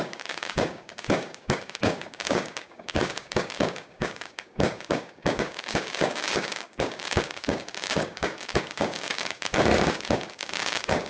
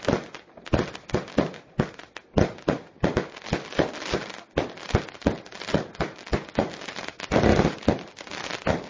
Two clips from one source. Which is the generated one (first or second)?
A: first